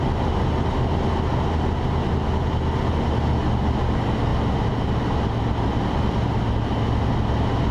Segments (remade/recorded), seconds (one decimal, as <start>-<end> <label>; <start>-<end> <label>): 0.0-7.7 recorded